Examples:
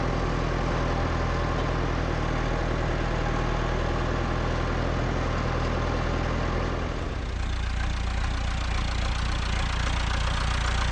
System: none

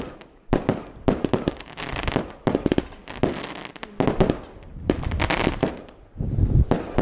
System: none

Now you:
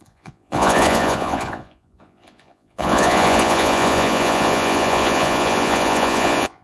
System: vocoder, Vocos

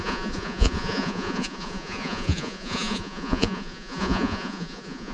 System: vocoder, Vocos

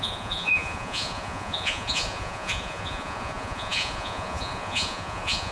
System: vocoder, Vocos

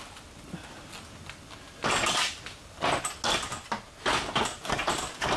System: none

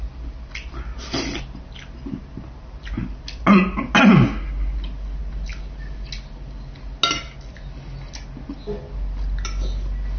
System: none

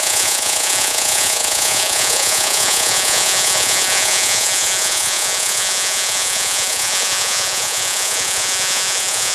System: vocoder, Vocos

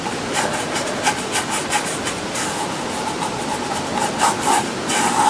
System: none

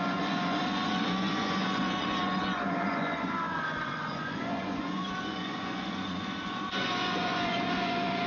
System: vocoder, Vocos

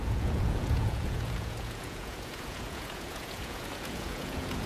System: vocoder, Vocos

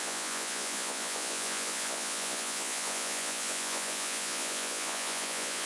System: vocoder, Vocos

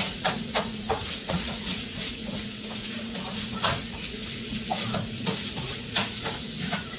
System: vocoder, Vocos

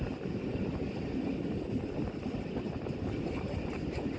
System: none